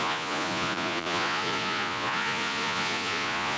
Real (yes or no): no